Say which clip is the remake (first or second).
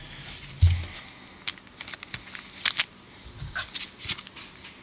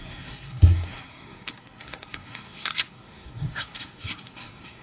second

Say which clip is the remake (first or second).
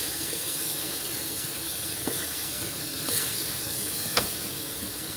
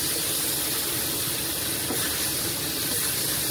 first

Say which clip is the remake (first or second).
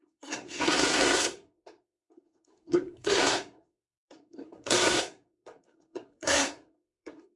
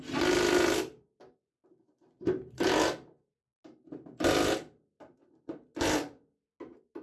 first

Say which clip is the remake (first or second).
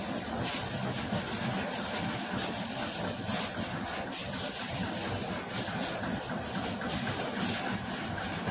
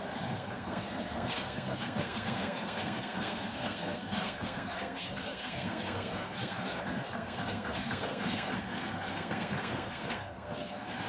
second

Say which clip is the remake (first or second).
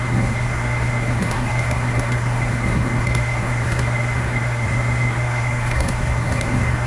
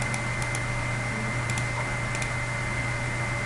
first